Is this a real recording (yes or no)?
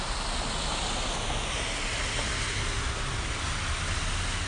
yes